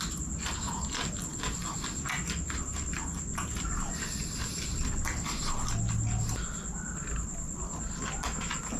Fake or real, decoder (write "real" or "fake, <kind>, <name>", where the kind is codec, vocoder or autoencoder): real